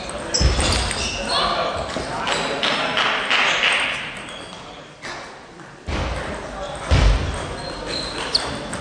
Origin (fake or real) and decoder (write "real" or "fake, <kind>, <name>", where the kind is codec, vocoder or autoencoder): real